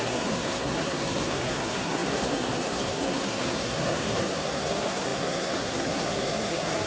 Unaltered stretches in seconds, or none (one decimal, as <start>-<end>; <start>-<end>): none

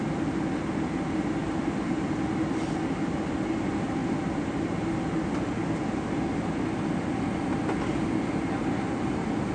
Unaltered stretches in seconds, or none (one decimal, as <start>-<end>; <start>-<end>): 0.0-9.5

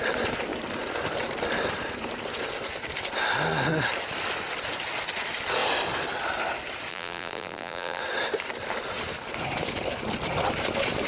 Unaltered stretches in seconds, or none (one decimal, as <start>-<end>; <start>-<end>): 0.0-6.9; 8.0-11.1

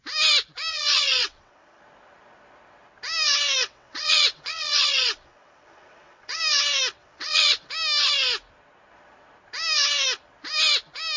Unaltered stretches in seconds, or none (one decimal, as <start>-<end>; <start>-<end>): 0.0-0.7; 1.8-3.6; 6.4-7.0; 7.7-11.2

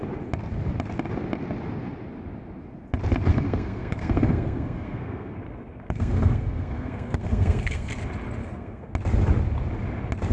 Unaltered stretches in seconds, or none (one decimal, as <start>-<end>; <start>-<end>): 0.0-3.3; 7.9-8.4; 8.9-10.3

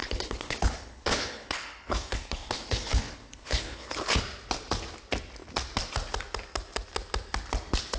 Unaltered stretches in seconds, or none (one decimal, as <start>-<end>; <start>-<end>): 4.2-8.0